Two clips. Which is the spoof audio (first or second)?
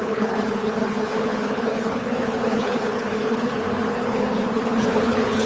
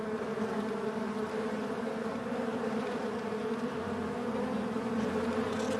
first